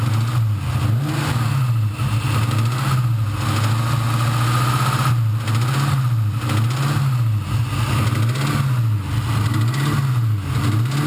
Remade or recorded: recorded